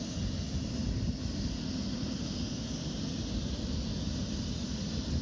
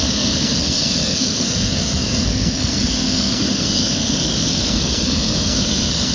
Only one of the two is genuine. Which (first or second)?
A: first